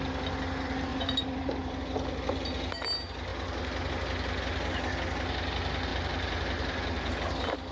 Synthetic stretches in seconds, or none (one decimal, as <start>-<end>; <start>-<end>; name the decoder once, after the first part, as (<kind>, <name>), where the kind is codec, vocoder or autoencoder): 0.9-1.8 (vocoder, BigVGAN v2); 5.9-7.1